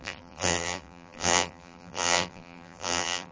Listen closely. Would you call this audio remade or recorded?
remade